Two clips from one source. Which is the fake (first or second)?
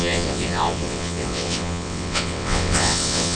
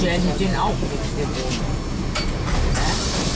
first